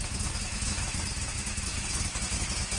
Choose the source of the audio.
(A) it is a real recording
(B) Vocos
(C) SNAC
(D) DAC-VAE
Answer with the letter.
D